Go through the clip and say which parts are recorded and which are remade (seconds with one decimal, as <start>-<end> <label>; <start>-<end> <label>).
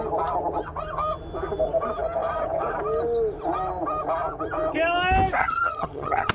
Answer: 0.0-5.4 recorded; 5.4-6.3 remade